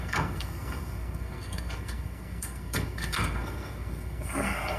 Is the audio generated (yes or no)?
yes